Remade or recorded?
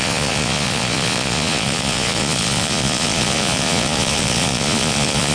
remade